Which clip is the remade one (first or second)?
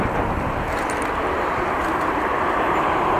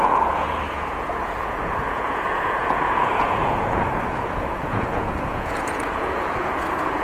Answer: second